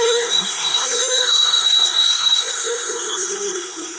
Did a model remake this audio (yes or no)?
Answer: yes